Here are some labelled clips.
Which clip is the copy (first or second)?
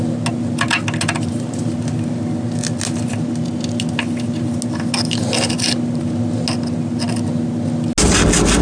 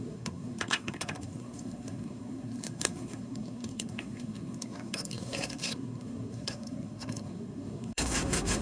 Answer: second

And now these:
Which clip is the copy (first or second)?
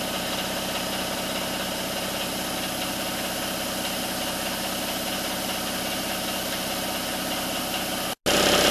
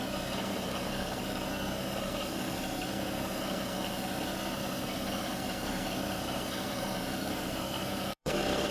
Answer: second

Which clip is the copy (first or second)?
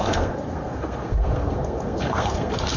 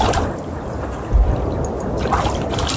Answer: first